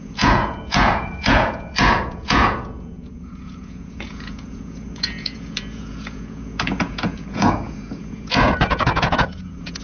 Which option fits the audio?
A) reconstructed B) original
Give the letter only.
A